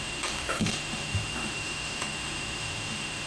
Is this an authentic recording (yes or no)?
no